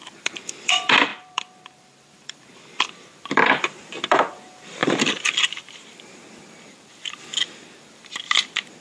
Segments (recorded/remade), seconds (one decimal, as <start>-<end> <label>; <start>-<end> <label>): 0.0-8.8 remade